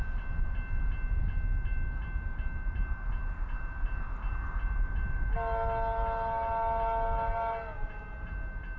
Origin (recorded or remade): recorded